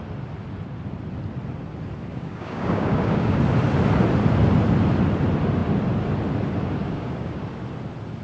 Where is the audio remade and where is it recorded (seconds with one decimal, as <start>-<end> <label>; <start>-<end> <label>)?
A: 0.0-2.1 recorded; 2.1-3.4 remade; 3.4-6.8 recorded; 6.8-7.4 remade; 7.4-8.2 recorded